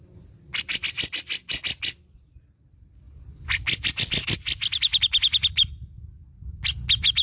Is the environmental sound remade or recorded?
recorded